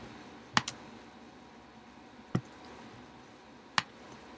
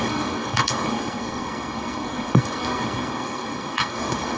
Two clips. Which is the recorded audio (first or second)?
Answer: first